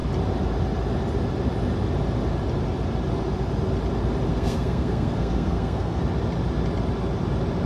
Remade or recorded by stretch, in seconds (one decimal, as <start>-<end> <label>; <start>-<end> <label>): 0.0-4.3 recorded; 4.3-6.0 remade; 6.0-7.7 recorded